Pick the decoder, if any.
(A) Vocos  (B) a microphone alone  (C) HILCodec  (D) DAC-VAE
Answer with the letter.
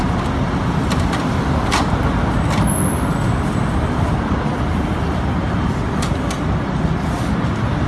B